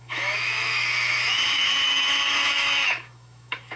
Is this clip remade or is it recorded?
remade